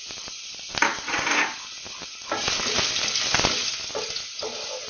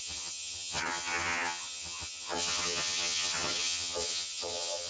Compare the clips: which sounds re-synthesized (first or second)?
second